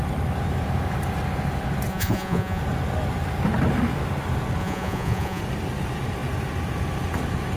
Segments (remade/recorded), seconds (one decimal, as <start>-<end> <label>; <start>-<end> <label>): 0.0-1.9 recorded; 1.9-2.6 remade; 2.6-4.6 recorded; 4.6-5.4 remade; 5.4-7.6 recorded